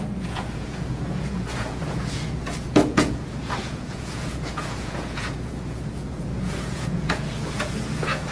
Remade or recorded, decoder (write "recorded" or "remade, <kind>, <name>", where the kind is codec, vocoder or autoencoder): remade, vocoder, Vocos